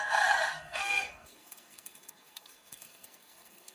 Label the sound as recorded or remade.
remade